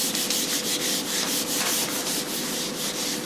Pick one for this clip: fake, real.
real